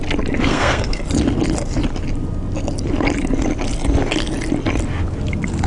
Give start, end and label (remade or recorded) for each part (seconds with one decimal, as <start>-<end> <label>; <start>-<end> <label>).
0.0-0.5 recorded; 0.5-1.0 remade; 1.0-5.7 recorded